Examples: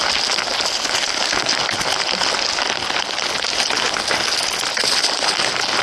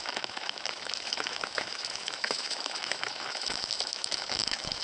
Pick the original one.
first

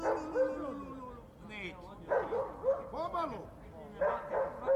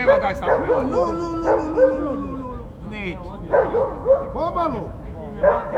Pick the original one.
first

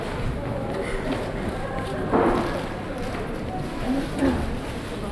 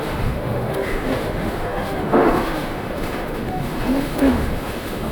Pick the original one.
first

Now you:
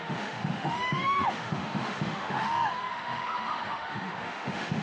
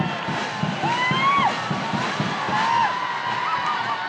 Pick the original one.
second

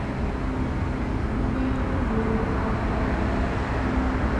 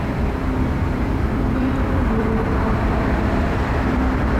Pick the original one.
first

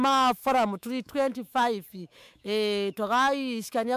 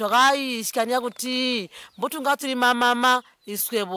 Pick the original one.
second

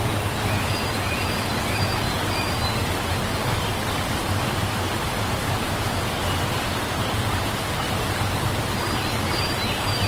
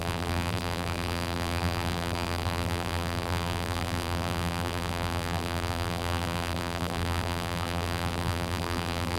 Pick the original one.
first